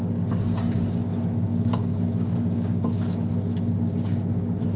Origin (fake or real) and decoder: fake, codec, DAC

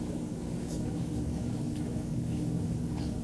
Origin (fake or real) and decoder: fake, codec, DAC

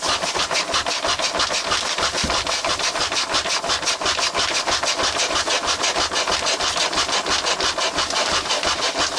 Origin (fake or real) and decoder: real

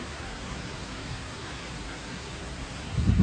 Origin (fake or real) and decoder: fake, codec, SNAC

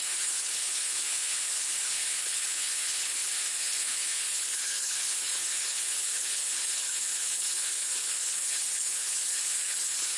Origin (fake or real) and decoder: fake, codec, HILCodec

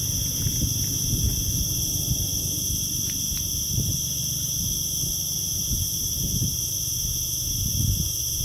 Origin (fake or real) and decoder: real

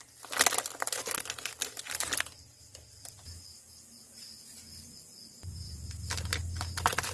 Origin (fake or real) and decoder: real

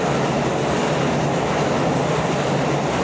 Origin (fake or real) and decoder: real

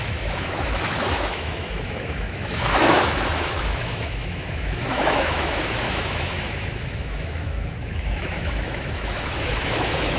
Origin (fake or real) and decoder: fake, autoencoder, DAC-VAE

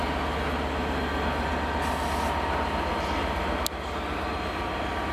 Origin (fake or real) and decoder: real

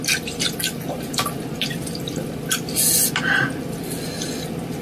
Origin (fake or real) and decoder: real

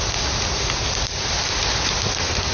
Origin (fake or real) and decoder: real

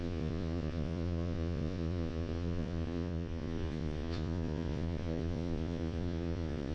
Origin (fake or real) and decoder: fake, vocoder, Vocos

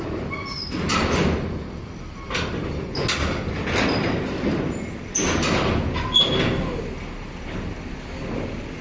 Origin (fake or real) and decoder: real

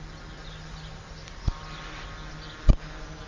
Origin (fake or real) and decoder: real